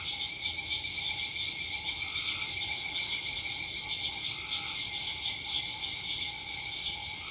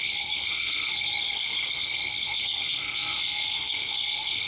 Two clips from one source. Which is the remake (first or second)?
second